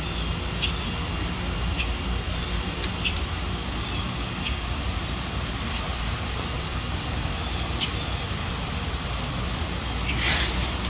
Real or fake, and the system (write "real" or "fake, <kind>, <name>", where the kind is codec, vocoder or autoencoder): real